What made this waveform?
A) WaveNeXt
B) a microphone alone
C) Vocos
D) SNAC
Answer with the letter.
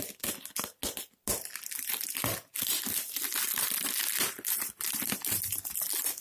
B